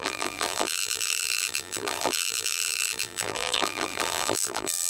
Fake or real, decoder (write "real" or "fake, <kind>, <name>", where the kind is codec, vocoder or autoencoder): fake, vocoder, BigVGAN v2